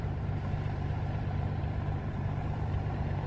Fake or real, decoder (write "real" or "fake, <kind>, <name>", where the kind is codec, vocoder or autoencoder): fake, vocoder, BigVGAN v2